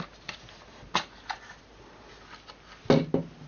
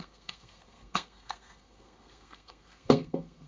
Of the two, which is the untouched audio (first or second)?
first